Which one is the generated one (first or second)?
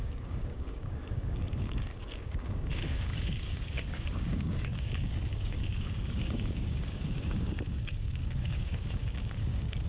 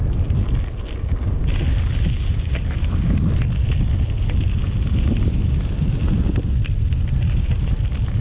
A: first